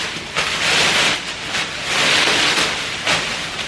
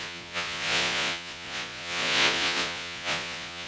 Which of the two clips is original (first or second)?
first